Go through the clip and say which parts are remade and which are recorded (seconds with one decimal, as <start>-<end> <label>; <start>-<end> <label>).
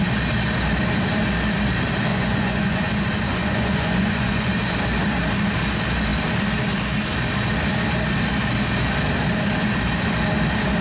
0.0-2.1 recorded; 2.1-2.9 remade; 2.9-3.3 recorded; 3.3-4.5 remade; 4.5-10.8 recorded